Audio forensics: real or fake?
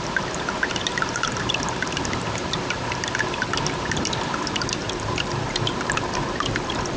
fake